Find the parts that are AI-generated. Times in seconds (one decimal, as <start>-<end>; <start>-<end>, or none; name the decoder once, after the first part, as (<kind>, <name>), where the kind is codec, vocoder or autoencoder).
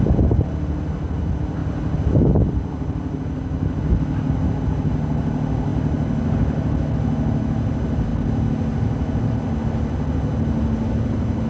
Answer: none